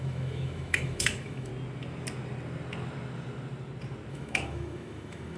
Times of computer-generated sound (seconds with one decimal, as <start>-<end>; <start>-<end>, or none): 0.0-1.5; 4.1-5.4